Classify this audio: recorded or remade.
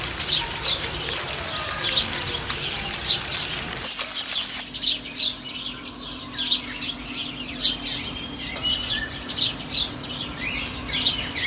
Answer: recorded